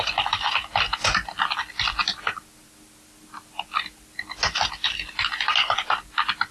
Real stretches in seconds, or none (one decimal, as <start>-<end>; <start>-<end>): 0.0-6.5